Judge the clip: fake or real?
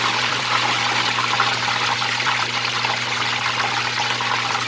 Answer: fake